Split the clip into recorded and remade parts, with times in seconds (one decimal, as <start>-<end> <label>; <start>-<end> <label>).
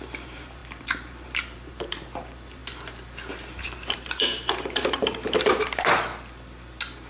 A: 0.0-2.6 remade; 2.6-3.6 recorded; 3.6-6.1 remade; 6.1-7.1 recorded